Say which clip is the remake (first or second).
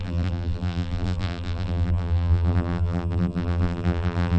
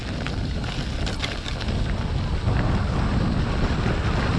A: first